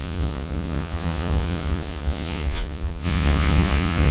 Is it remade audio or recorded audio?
remade